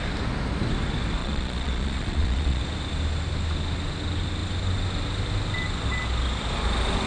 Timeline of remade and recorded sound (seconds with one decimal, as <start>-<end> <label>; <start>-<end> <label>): 0.0-1.2 recorded; 1.2-2.6 remade; 2.6-7.1 recorded